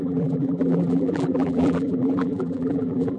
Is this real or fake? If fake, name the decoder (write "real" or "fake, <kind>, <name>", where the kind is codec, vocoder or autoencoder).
fake, vocoder, BigVGAN v2